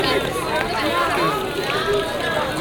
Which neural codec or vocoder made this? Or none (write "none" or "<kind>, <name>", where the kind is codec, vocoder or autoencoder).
none